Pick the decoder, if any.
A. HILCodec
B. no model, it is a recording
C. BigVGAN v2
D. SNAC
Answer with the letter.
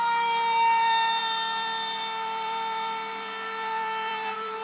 C